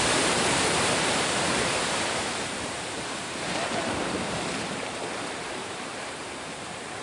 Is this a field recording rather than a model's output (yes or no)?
no